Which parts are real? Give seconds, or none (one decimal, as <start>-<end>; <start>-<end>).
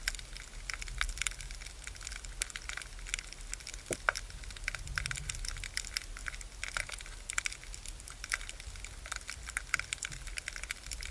0.0-11.1